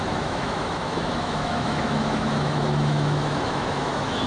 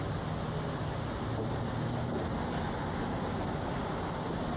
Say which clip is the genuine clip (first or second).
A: second